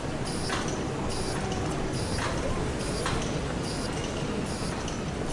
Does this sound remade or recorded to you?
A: recorded